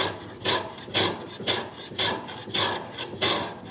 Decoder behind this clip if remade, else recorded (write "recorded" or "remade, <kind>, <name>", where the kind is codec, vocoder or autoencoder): recorded